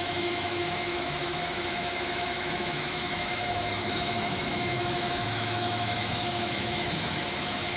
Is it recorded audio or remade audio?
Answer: remade